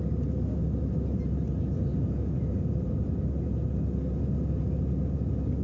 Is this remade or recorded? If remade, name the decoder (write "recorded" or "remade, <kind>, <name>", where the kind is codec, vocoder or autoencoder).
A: recorded